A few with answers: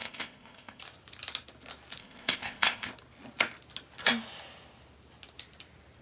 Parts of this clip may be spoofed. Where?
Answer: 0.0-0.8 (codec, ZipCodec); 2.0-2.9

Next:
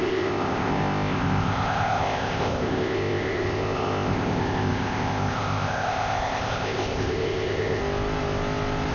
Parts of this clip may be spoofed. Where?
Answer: 0.0-7.8 (codec, ZipCodec)

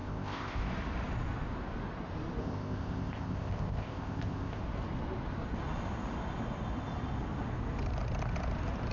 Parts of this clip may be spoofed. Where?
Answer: 0.0-0.7 (codec, ZipCodec); 2.4-4.6

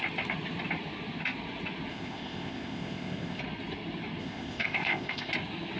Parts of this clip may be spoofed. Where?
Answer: 1.9-3.4 (codec, ZipCodec); 4.2-5.3

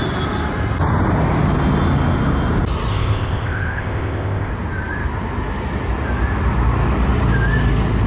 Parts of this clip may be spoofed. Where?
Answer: 2.9-4.5 (codec, ZipCodec)

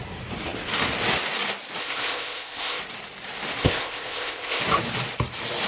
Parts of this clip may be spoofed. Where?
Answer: 1.8-2.8 (codec, ZipCodec); 3.6-4.6

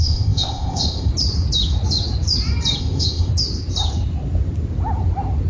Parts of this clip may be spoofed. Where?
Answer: 0.0-1.1 (codec, ZipCodec); 2.8-3.3

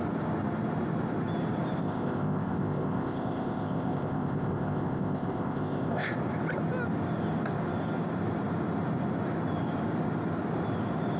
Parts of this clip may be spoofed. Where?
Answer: 1.8-6.1 (codec, ZipCodec)